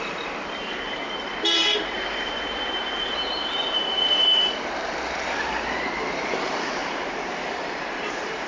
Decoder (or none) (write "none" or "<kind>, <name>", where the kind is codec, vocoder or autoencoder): vocoder, BigVGAN v2